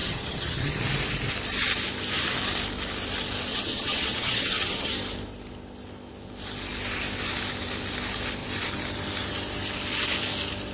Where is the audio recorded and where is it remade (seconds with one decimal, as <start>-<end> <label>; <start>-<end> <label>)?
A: 0.0-0.8 remade; 0.8-3.5 recorded; 3.5-4.9 remade; 4.9-10.7 recorded